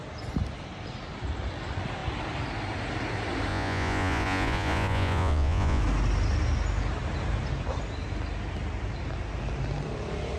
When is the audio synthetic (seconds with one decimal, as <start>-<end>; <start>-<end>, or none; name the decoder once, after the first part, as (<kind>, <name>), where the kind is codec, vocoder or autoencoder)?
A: 3.5-5.8 (vocoder, Vocos)